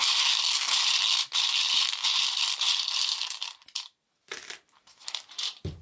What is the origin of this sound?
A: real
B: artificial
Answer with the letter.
A